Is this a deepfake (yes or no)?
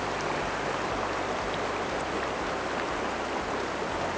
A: no